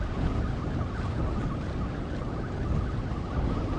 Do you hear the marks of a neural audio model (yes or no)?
no